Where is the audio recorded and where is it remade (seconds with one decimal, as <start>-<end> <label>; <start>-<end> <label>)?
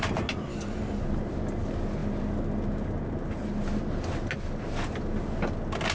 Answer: 0.0-0.5 recorded; 0.5-1.0 remade; 1.0-5.9 recorded